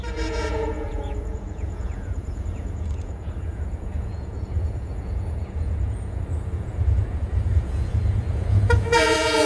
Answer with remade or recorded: remade